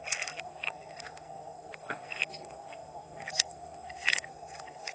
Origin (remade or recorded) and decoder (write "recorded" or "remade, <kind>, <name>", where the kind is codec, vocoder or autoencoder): remade, codec, SNAC